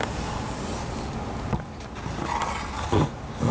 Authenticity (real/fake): real